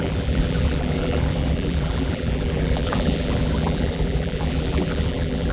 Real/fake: fake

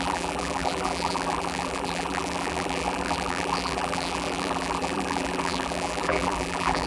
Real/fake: fake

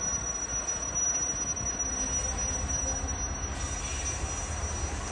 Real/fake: real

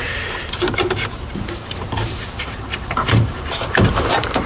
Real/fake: fake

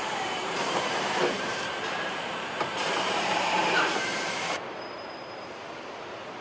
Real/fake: fake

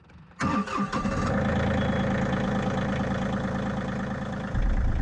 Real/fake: real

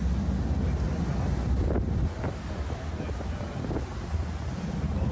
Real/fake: real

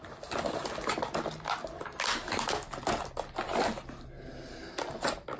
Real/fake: real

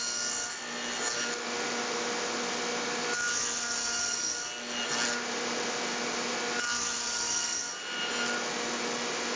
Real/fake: real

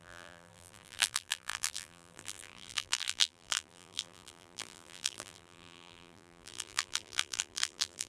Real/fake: fake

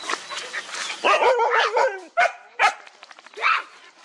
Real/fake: real